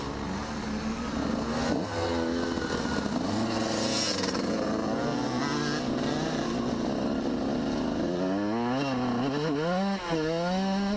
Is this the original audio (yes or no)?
yes